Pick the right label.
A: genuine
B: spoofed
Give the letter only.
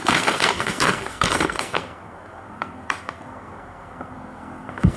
B